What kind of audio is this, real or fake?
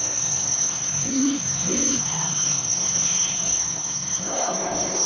fake